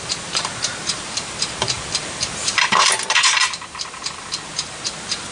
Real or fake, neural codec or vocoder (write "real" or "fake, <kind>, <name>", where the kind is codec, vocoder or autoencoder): fake, vocoder, BigVGAN v2